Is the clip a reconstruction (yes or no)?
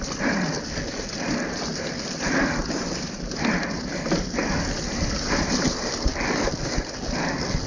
no